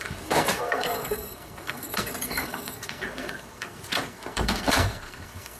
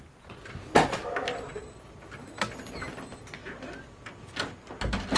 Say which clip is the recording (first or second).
second